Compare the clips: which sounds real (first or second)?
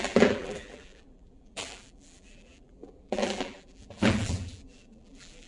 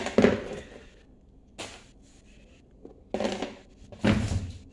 second